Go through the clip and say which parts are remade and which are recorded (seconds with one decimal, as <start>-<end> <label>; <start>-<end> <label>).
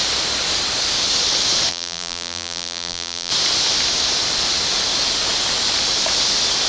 0.0-1.7 recorded; 1.7-3.3 remade; 3.3-6.7 recorded